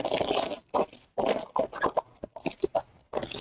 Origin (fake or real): real